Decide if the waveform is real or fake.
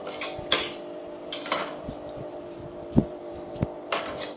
fake